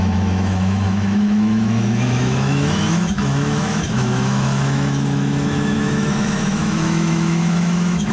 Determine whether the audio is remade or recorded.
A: remade